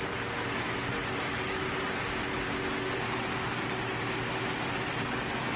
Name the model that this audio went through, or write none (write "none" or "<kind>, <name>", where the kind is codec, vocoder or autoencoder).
none